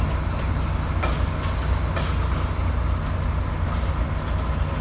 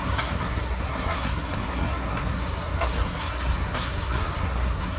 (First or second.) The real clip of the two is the first